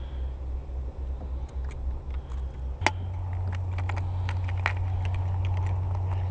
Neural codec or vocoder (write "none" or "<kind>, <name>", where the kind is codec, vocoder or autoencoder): none